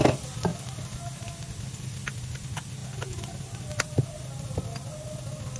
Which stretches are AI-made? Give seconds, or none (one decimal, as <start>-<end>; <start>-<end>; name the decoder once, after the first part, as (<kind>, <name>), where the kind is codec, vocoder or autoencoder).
none